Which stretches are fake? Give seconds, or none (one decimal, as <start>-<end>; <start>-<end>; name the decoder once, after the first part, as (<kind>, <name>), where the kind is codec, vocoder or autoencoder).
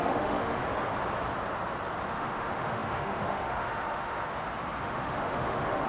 0.0-0.6 (autoencoder, DAC-VAE); 2.1-4.3; 4.8-5.9